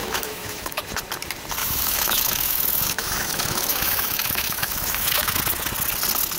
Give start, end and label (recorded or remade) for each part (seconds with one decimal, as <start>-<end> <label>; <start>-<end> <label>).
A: 0.0-0.8 remade; 0.8-1.6 recorded; 1.6-5.4 remade; 5.4-6.4 recorded